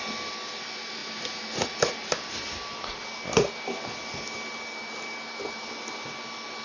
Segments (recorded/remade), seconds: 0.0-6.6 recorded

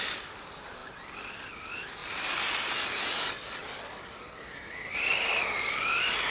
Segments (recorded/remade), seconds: 0.0-6.3 recorded